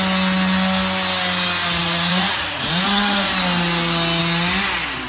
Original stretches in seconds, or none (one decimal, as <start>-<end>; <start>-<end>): 0.0-1.8; 3.3-5.1